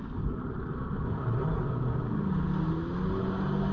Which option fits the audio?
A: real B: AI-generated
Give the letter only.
A